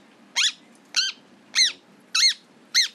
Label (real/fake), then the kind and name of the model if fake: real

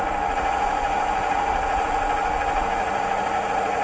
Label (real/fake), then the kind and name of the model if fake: fake, vocoder, Vocos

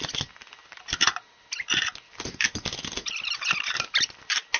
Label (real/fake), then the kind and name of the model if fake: real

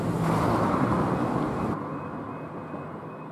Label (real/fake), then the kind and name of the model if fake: real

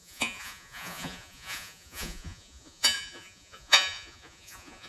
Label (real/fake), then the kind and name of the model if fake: fake, vocoder, Vocos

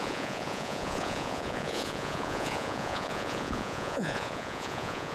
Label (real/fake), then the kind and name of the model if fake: fake, vocoder, Vocos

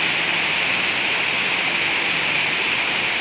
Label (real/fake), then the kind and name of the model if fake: real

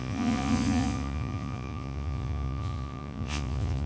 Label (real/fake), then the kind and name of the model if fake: fake, vocoder, Vocos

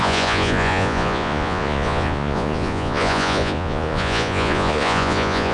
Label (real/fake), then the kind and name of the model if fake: fake, vocoder, Vocos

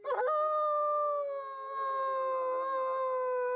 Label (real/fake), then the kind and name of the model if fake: real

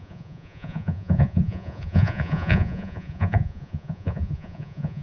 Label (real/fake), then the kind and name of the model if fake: fake, vocoder, Vocos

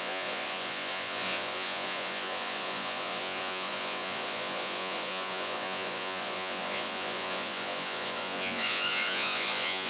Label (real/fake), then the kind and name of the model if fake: fake, vocoder, Vocos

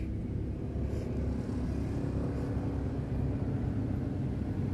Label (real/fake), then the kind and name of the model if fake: real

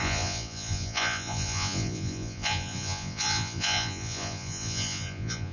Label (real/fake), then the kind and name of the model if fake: fake, vocoder, Vocos